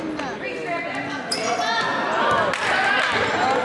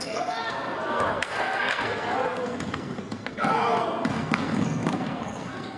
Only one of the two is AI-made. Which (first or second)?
second